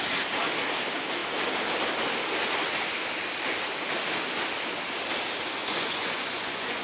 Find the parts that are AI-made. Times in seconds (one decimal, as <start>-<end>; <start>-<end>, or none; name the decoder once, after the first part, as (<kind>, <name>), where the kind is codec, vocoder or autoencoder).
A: 5.6-6.8 (vocoder, Vocos)